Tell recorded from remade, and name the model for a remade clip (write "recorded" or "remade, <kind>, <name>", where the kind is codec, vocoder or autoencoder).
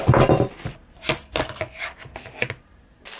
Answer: recorded